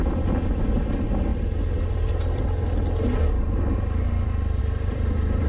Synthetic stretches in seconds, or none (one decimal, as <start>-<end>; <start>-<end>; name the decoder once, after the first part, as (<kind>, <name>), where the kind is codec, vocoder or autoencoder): 0.6-1.3 (vocoder, BigVGAN v2); 4.6-5.5